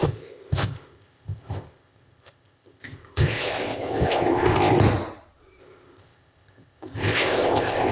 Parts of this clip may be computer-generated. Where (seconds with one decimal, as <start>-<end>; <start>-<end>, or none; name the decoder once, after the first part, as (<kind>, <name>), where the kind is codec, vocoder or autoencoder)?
0.0-4.7 (codec, ZipCodec); 5.6-7.9